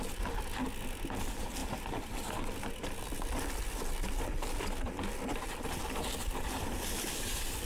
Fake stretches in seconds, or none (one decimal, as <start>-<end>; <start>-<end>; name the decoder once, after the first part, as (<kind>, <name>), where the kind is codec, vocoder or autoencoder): none